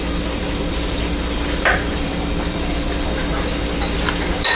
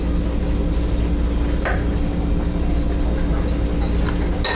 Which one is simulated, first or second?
first